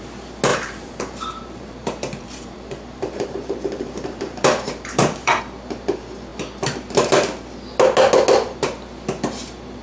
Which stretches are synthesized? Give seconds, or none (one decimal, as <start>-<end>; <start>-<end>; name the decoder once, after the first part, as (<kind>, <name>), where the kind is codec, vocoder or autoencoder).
0.5-5.4 (vocoder, BigVGAN v2)